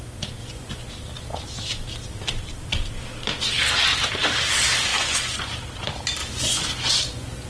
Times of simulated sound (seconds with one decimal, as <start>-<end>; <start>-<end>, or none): 0.4-0.9; 4.9-5.5; 6.2-7.5